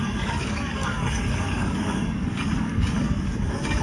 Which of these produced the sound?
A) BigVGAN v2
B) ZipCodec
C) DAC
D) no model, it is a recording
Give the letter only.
C